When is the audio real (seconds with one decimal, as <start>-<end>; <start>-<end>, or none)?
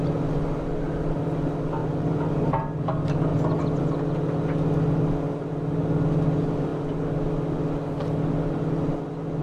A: 0.0-1.8; 2.9-9.4